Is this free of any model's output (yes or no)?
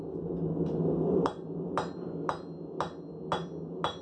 yes